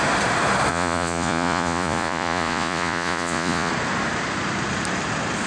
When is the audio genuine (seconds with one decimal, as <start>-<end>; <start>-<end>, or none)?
0.0-0.7; 3.7-5.5

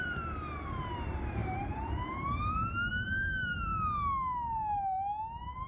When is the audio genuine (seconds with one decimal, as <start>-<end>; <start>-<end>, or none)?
3.7-5.7